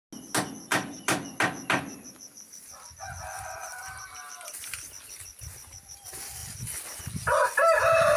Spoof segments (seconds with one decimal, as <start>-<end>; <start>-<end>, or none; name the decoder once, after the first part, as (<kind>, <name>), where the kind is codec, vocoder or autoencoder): 0.7-1.2 (vocoder, BigVGAN v2); 3.6-4.3; 6.4-7.0